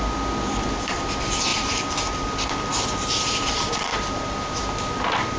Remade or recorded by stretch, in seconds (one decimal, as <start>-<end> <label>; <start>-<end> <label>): 0.0-1.5 recorded; 1.5-2.3 remade; 2.3-2.7 recorded; 2.7-3.8 remade; 3.8-5.4 recorded